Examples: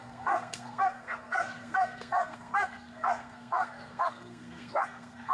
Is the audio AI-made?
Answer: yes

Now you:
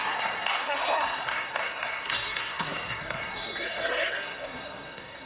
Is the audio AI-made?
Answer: yes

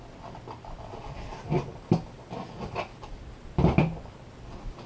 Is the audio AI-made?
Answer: no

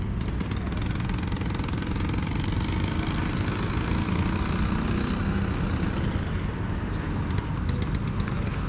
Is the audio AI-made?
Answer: no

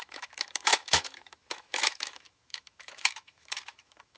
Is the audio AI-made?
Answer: yes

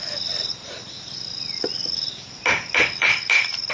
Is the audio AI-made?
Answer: no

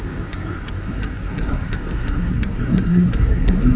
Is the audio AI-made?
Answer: yes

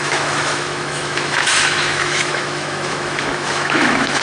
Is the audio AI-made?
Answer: yes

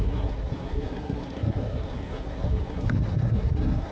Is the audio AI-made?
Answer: yes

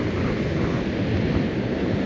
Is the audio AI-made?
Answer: no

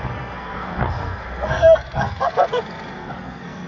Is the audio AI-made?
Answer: yes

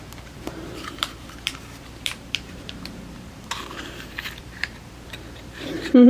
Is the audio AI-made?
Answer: yes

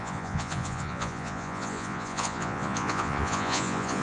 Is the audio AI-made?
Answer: yes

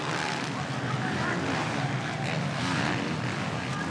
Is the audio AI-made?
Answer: no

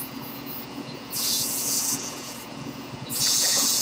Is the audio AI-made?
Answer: yes